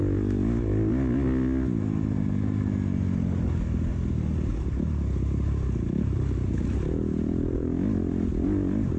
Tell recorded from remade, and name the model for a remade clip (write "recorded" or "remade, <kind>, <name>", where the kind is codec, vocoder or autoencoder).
recorded